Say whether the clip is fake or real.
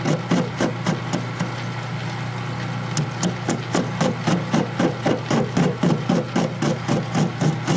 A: real